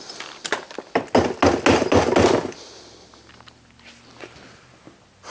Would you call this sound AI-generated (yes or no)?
no